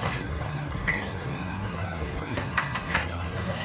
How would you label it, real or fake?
fake